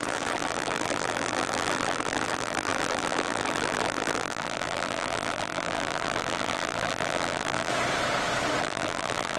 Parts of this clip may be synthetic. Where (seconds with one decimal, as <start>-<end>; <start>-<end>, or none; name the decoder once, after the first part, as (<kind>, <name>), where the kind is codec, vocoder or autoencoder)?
0.0-7.7 (vocoder, BigVGAN v2); 8.6-9.4